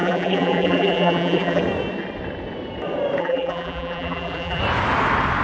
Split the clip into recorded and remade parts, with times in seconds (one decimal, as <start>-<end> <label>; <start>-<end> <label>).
0.0-1.6 remade; 1.6-3.2 recorded; 3.2-4.6 remade; 4.6-5.4 recorded